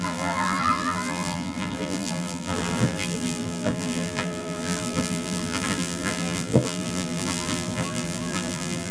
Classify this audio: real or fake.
fake